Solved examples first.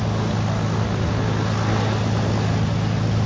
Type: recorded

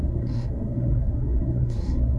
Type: remade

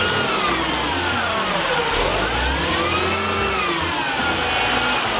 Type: recorded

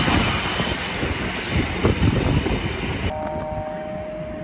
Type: recorded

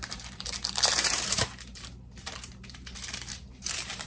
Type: remade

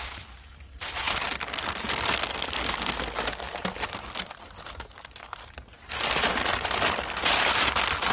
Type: recorded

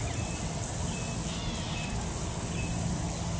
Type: recorded